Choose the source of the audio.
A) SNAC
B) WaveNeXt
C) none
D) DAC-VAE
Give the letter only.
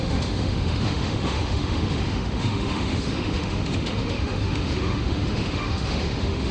D